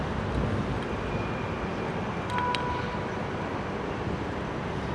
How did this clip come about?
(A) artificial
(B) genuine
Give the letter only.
B